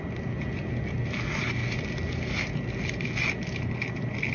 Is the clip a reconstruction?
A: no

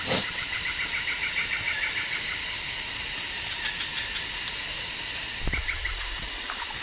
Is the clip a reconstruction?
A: no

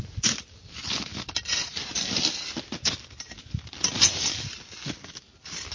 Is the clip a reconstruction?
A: no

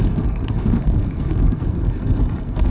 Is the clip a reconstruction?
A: yes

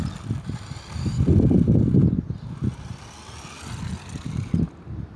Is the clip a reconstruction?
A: no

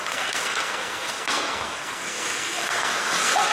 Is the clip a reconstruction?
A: yes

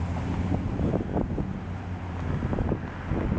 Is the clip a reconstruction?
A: no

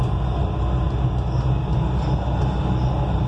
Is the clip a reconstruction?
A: no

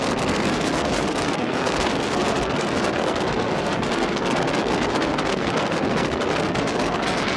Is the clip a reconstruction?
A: yes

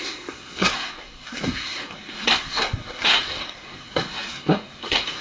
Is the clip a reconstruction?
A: yes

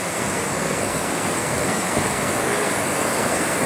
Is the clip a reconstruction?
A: yes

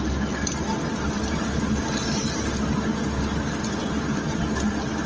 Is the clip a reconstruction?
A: no